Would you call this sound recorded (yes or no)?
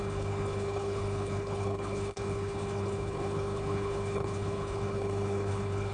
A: no